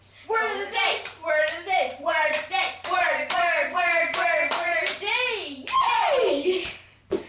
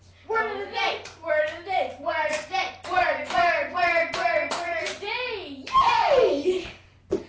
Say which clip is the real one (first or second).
second